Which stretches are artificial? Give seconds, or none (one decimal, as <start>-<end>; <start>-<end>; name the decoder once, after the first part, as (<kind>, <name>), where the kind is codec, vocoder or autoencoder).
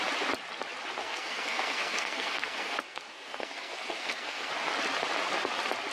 1.0-4.5 (codec, SNAC)